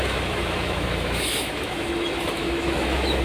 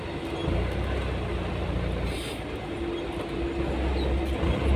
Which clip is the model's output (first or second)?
first